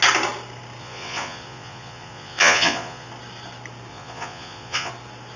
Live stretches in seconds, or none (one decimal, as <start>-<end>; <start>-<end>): 0.0-0.8; 3.1-3.9; 4.9-5.4